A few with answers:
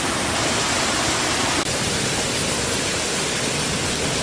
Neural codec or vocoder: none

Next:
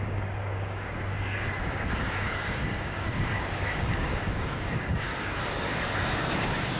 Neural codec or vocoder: codec, DAC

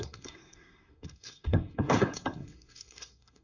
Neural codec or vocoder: codec, SNAC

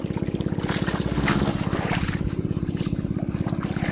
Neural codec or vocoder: none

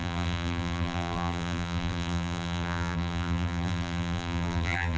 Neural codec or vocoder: vocoder, BigVGAN v2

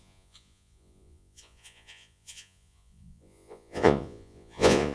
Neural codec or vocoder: vocoder, Vocos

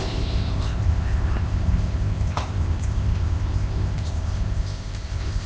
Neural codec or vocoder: codec, ZipCodec